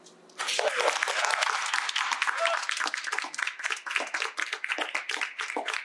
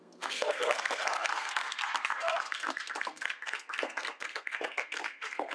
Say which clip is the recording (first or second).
first